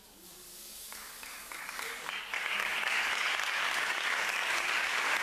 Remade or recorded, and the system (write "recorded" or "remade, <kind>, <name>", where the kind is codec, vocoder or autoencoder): remade, codec, DAC